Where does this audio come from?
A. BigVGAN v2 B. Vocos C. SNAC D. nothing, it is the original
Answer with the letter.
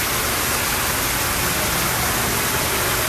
D